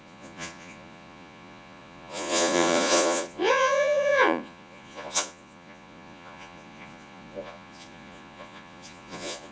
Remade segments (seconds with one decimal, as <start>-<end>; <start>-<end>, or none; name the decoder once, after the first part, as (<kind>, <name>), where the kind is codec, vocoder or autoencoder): 0.0-9.5 (vocoder, Vocos)